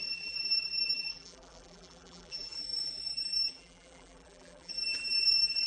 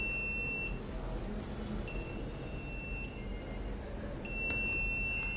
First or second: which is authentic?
second